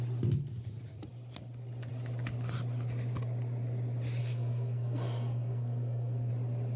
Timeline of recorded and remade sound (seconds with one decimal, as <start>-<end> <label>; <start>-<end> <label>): 0.0-4.2 recorded; 4.2-6.3 remade; 6.3-6.8 recorded